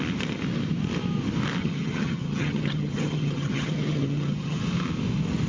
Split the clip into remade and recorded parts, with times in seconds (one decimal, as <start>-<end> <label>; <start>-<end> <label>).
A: 0.0-1.6 recorded; 1.6-4.6 remade; 4.6-5.5 recorded